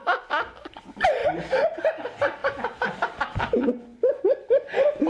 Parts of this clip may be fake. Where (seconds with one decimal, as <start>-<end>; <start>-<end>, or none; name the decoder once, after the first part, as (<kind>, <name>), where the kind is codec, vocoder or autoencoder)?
2.4-3.2 (vocoder, BigVGAN v2)